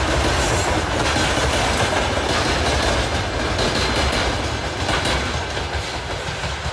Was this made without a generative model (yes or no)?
yes